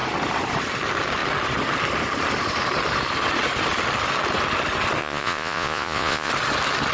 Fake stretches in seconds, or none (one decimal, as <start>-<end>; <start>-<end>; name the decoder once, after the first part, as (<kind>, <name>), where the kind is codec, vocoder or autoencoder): 5.0-6.3 (vocoder, Vocos)